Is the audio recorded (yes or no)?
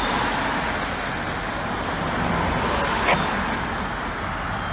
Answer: yes